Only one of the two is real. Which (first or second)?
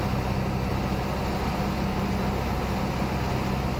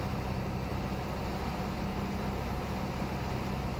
first